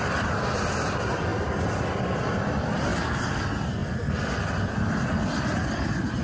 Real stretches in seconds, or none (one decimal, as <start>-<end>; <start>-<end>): 0.0-1.3; 2.0-2.9; 3.4-3.8; 5.0-6.2